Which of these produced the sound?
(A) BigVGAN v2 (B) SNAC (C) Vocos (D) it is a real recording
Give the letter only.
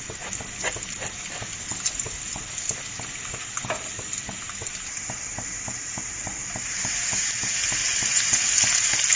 D